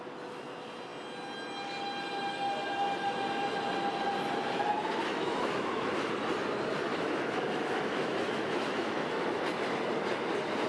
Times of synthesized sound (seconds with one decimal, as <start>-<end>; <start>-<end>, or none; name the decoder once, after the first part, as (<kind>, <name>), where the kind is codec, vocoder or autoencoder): 5.1-6.1 (autoencoder, DAC-VAE); 6.9-9.4